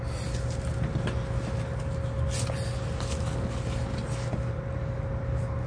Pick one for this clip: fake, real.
real